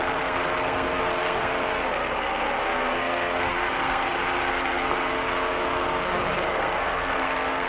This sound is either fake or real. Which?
fake